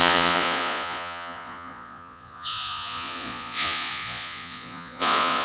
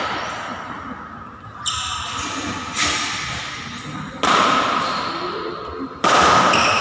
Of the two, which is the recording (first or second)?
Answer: second